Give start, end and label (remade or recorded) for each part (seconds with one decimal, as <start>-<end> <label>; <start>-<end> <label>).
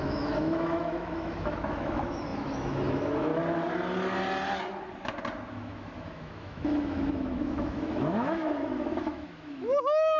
0.0-3.3 remade; 3.3-5.5 recorded; 5.5-10.2 remade